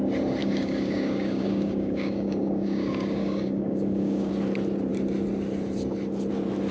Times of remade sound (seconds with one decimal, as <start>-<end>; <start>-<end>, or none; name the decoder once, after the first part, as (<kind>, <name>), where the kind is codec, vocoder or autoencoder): 0.4-4.3 (codec, DAC)